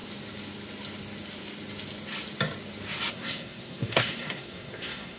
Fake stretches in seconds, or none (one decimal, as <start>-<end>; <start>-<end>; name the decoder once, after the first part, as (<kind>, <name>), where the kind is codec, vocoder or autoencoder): 3.1-5.2 (codec, SNAC)